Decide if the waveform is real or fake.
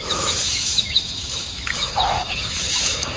fake